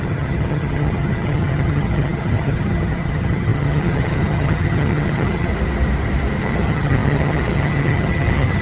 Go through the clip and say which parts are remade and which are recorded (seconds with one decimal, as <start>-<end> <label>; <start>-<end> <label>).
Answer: 0.0-5.5 remade; 5.5-6.4 recorded; 6.4-8.6 remade